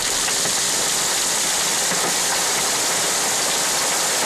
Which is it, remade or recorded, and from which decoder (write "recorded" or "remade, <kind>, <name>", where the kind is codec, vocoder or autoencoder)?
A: recorded